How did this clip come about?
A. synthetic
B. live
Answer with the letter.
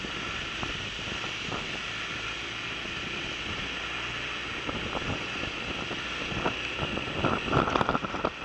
A